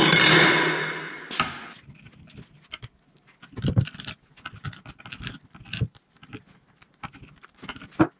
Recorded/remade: recorded